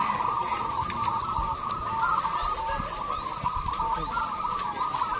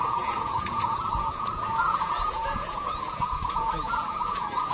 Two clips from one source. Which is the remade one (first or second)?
second